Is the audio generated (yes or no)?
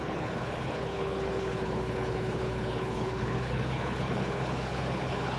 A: yes